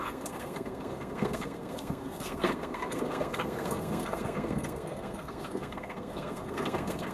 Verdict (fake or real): fake